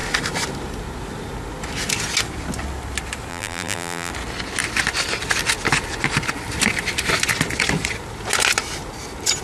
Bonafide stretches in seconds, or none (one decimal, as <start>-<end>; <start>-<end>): 0.0-3.3; 4.1-9.4

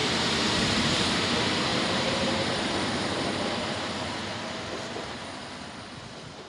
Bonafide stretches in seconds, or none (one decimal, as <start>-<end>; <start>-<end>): 1.2-1.7; 3.7-6.5

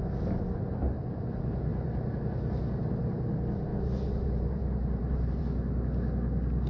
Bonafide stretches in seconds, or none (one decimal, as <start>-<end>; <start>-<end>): 0.0-1.7; 2.2-3.7; 5.4-6.7

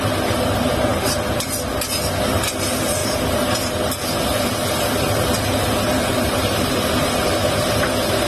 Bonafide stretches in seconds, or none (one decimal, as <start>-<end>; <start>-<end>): 0.0-3.0; 3.9-6.0; 7.1-8.3